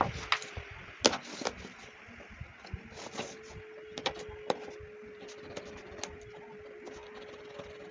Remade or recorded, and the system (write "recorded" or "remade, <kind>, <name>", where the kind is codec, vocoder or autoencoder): recorded